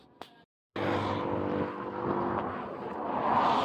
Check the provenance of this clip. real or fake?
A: real